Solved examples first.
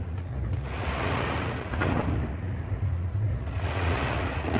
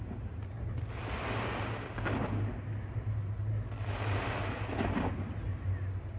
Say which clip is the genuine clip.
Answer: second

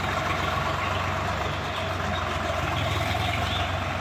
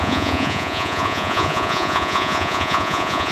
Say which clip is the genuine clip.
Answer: first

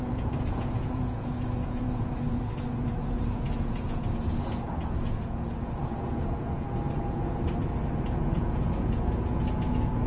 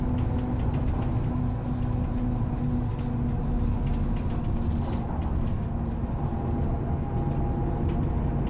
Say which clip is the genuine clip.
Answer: second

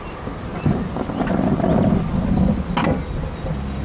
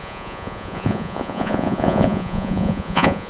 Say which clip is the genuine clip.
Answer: first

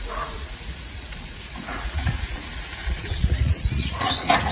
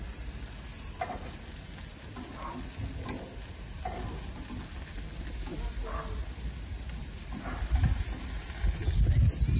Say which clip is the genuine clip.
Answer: second